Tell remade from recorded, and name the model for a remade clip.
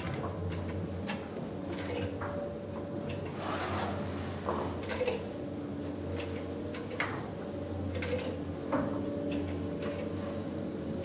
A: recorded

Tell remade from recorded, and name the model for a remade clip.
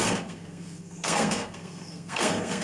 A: remade, codec, SNAC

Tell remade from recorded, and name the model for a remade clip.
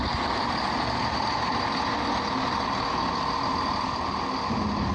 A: recorded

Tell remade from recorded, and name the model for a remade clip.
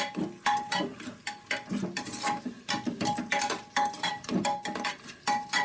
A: recorded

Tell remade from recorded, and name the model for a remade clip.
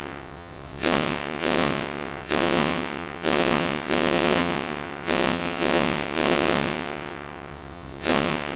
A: remade, vocoder, WaveNeXt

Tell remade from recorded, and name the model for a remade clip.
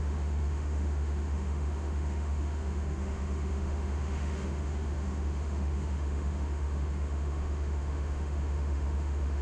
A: remade, autoencoder, DAC-VAE